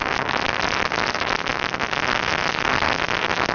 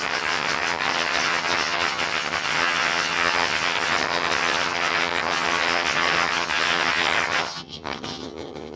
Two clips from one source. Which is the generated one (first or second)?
second